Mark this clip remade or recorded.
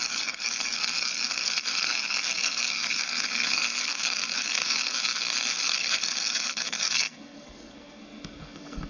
remade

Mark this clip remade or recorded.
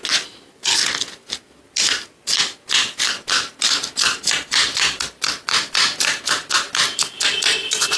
recorded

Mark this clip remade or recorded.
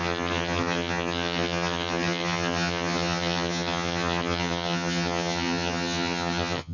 remade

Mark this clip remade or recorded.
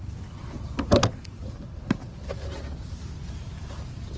recorded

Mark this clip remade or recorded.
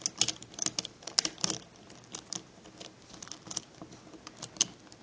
recorded